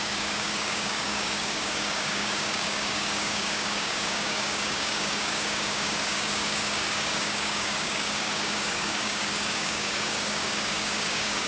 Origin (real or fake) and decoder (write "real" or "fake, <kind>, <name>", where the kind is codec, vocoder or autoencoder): fake, codec, DAC